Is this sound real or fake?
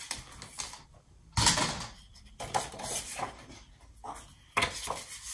real